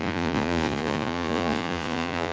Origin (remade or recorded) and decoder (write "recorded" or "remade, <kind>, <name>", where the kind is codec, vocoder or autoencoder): remade, vocoder, Vocos